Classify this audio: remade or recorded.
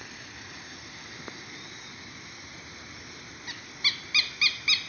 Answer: recorded